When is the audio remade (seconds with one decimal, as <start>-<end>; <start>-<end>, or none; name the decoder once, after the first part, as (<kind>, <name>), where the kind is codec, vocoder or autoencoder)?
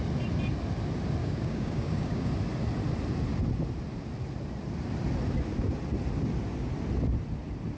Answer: 1.2-2.3 (codec, DAC)